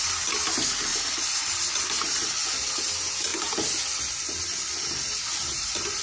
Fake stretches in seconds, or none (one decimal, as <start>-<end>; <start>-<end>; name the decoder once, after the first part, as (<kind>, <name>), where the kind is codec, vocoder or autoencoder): 0.9-1.4 (vocoder, BigVGAN v2); 3.3-4.2